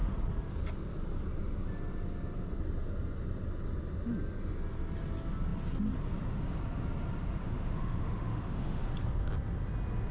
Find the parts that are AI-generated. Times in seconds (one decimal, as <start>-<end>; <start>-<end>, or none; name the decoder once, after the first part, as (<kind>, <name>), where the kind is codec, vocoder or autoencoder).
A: 7.4-8.8 (autoencoder, DAC-VAE)